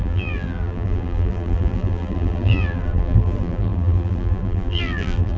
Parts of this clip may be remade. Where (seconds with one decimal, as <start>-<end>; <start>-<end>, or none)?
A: 0.0-5.4